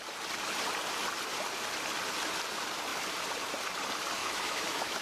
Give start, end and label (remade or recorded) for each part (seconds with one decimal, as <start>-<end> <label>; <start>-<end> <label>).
0.0-4.2 recorded; 4.2-5.0 remade